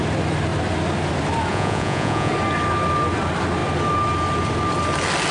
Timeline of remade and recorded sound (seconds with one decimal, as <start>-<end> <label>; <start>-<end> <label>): 0.0-1.5 recorded; 1.5-2.3 remade; 2.3-5.3 recorded